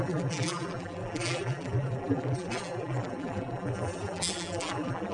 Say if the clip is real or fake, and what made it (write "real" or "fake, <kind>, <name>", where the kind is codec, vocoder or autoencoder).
fake, vocoder, BigVGAN v2